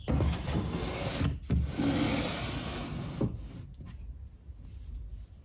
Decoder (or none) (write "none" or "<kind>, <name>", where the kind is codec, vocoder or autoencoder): none